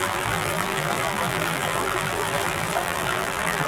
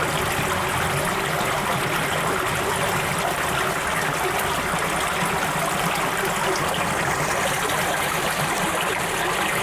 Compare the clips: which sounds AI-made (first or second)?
first